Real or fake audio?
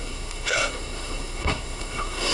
fake